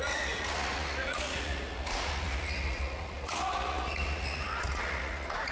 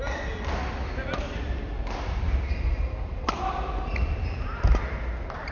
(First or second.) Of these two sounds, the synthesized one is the first